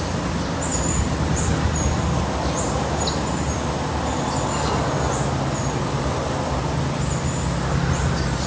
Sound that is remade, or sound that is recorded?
recorded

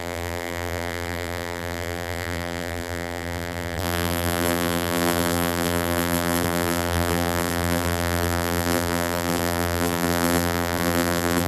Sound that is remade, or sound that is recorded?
remade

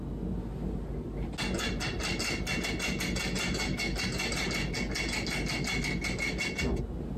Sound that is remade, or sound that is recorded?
recorded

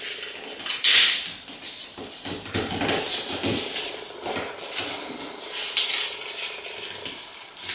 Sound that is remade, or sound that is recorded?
recorded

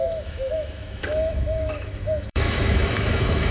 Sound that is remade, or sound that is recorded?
remade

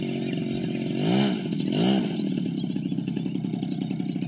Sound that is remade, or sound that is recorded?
recorded